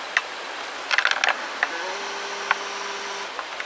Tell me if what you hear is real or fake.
real